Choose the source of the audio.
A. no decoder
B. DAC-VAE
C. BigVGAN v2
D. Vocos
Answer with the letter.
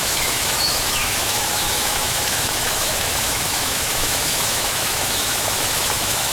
B